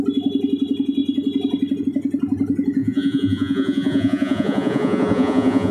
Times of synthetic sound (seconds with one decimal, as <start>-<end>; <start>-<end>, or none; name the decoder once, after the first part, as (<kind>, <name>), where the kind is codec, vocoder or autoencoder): 2.8-5.7 (vocoder, Vocos)